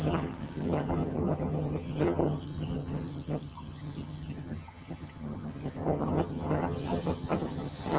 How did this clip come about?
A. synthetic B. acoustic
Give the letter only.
A